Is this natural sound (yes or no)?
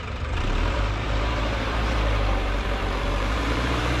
no